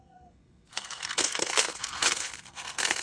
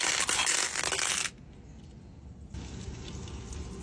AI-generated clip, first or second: first